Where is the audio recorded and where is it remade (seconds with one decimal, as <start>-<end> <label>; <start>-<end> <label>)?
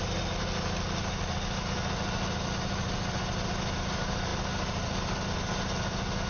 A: 0.0-6.3 recorded